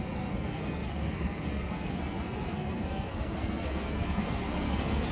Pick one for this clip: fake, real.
fake